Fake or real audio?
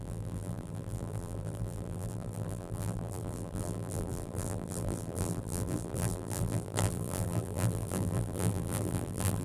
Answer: fake